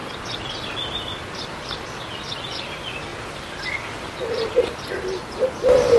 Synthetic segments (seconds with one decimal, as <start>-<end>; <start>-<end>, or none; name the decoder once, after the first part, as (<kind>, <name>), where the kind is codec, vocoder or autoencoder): 0.0-2.0 (vocoder, BigVGAN v2); 3.1-4.9